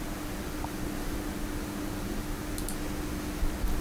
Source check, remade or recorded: recorded